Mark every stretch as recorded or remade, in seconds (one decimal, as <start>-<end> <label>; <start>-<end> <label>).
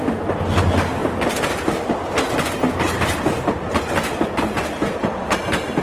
0.0-5.8 recorded